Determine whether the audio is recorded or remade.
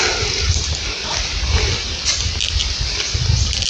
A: recorded